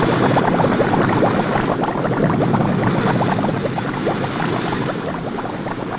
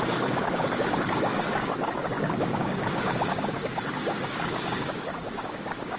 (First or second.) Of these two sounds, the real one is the first